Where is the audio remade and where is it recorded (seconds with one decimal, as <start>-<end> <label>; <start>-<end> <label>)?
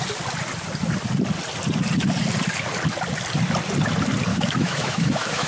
0.0-4.3 recorded; 4.3-5.5 remade